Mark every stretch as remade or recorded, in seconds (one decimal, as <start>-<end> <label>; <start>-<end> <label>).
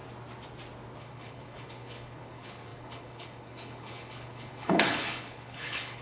0.0-1.0 recorded; 1.0-6.0 remade